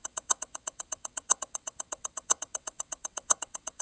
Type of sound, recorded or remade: remade